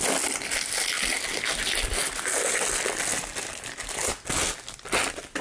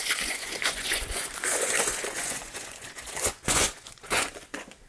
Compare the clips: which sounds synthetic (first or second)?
second